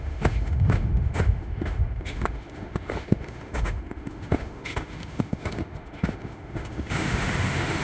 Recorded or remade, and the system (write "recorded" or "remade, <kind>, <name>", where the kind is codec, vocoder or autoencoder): remade, autoencoder, DAC-VAE